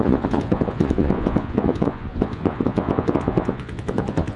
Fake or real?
fake